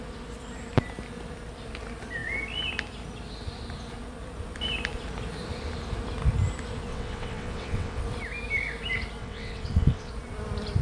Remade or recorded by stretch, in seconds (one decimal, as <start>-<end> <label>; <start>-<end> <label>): 0.0-6.9 recorded; 6.9-8.0 remade; 8.0-9.2 recorded; 9.2-10.1 remade; 10.1-10.8 recorded